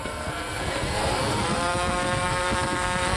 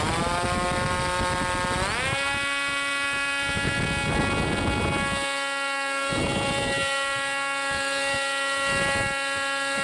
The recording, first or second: second